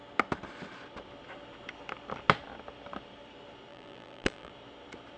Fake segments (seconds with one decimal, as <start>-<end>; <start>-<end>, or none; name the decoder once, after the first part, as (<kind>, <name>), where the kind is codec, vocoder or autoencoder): 3.7-4.5 (vocoder, BigVGAN v2)